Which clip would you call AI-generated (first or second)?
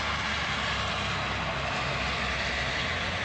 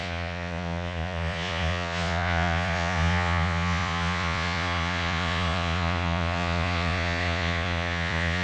second